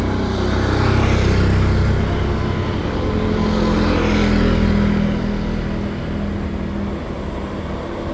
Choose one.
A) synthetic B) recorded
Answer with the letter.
B